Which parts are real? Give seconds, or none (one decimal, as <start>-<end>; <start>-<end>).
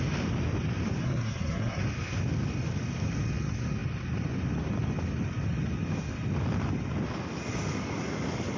0.0-1.0; 1.8-8.6